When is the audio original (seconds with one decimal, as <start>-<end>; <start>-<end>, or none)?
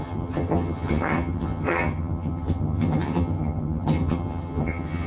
none